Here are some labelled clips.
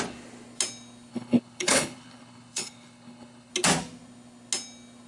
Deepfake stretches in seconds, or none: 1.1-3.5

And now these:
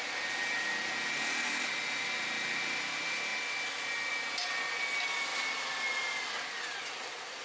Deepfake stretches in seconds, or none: none

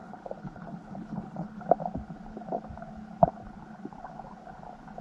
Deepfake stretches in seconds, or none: 0.0-1.6

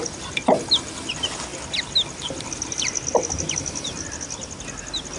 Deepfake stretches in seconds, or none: none

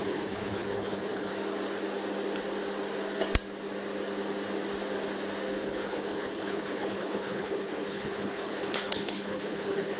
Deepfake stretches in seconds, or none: 0.0-1.3; 5.6-10.0

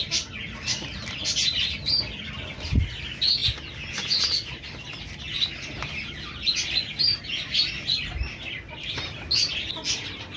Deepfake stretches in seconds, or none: none